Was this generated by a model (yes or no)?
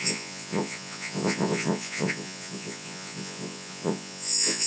yes